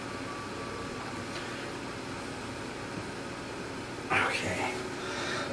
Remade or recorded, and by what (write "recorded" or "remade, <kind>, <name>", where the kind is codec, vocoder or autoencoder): recorded